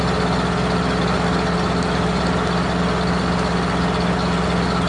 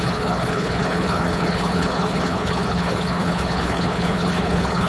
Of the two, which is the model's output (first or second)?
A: second